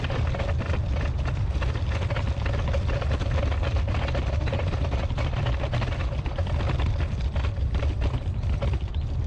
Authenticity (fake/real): fake